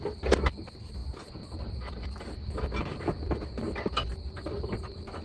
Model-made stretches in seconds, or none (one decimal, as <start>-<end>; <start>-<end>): none